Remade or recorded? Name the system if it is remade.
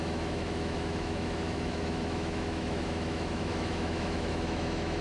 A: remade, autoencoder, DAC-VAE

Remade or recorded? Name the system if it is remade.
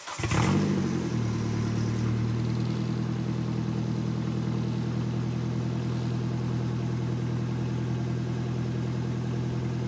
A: recorded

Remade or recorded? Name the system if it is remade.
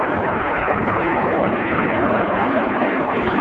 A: remade, codec, HILCodec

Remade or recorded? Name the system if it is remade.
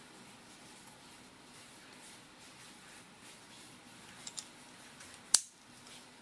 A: remade, vocoder, BigVGAN v2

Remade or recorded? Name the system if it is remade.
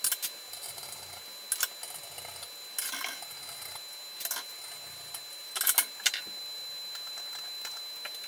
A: recorded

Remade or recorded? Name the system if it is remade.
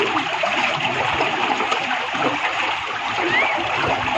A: remade, vocoder, BigVGAN v2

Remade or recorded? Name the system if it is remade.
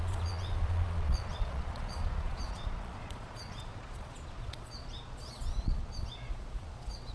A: remade, vocoder, Vocos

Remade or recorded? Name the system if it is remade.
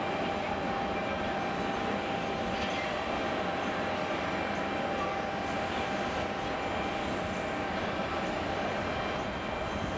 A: recorded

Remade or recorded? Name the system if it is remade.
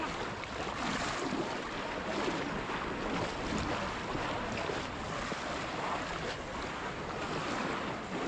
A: recorded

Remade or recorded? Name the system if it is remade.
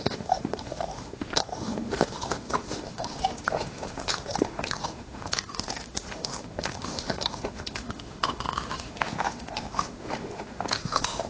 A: remade, autoencoder, DAC-VAE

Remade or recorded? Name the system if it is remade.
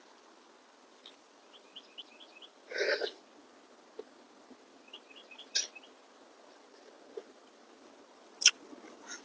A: recorded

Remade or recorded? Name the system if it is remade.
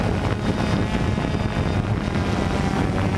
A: recorded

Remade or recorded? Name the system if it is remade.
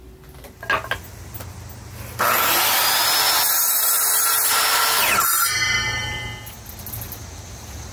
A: recorded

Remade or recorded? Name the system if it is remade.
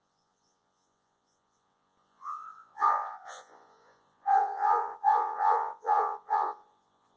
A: remade, vocoder, Vocos